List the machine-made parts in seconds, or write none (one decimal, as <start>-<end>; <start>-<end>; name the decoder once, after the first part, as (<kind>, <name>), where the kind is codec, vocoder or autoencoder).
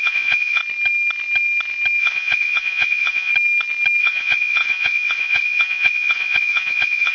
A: 0.0-0.6 (vocoder, Vocos); 2.0-3.3; 4.0-7.1